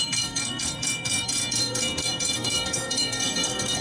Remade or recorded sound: remade